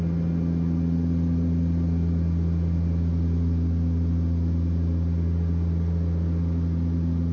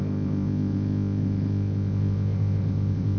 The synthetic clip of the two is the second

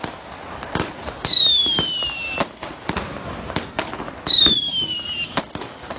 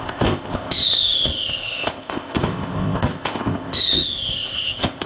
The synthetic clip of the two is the second